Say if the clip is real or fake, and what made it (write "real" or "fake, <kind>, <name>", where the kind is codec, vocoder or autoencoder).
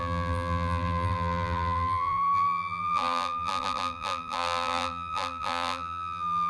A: fake, vocoder, BigVGAN v2